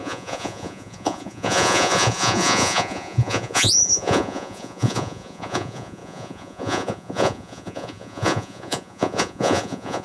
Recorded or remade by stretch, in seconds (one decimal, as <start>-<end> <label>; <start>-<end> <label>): 0.0-10.0 remade